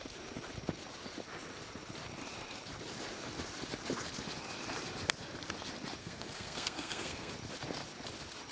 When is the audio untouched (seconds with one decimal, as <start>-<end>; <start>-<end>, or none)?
0.0-6.0; 7.3-8.5